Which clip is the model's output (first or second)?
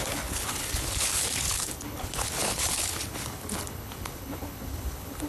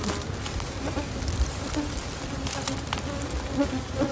first